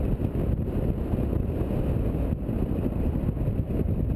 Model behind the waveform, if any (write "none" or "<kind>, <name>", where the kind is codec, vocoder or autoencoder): none